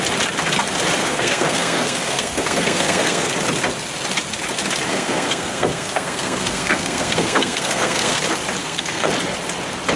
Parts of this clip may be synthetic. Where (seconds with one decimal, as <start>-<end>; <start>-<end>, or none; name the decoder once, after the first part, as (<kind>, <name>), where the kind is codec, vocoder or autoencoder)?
1.0-3.3 (codec, SNAC); 4.9-8.2; 8.6-9.1